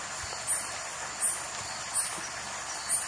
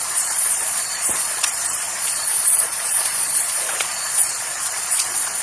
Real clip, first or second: first